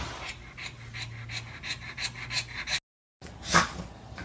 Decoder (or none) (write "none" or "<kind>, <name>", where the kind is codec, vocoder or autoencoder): none